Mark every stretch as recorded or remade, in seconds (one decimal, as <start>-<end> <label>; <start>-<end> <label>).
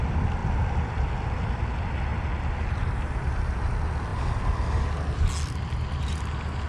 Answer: 0.0-6.7 recorded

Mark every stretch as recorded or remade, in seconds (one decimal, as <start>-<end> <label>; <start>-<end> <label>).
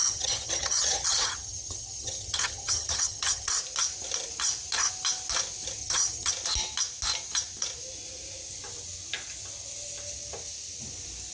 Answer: 0.0-3.5 remade; 3.5-5.8 recorded; 5.8-6.3 remade; 6.3-11.3 recorded